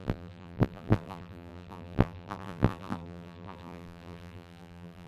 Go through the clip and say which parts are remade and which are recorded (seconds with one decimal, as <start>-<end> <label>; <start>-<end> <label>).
0.0-5.1 remade